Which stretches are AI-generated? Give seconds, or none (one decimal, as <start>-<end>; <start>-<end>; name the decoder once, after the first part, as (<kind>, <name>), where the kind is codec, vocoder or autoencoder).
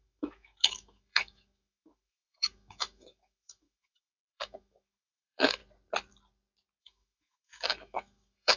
0.0-5.6 (autoencoder, DAC-VAE); 6.8-8.6